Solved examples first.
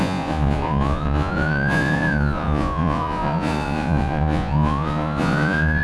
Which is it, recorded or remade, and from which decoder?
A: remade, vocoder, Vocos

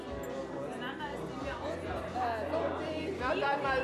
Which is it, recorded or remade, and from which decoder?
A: recorded